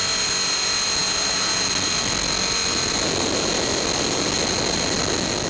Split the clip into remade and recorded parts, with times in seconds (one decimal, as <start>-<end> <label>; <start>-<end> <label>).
0.0-5.5 recorded